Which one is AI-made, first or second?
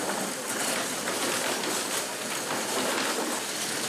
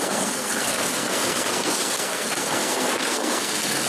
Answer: second